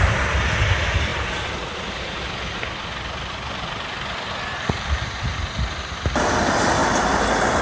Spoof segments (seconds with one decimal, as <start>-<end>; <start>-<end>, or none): none